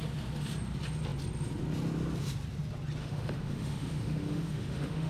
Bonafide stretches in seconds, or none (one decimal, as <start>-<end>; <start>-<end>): 0.0-3.0